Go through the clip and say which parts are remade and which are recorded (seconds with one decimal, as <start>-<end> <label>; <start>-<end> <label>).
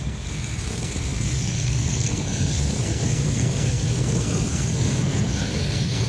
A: 0.0-6.1 remade